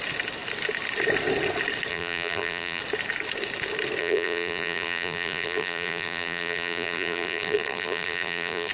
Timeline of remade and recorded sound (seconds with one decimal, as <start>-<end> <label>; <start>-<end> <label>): 0.0-1.9 recorded; 1.9-2.8 remade; 2.8-4.0 recorded; 4.0-8.7 remade